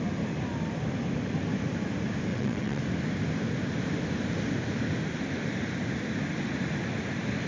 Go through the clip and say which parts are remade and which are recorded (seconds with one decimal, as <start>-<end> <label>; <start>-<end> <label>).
0.0-2.3 recorded; 2.3-2.8 remade; 2.8-7.5 recorded